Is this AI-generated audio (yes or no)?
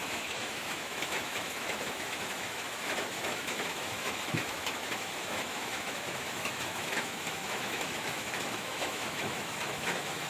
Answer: yes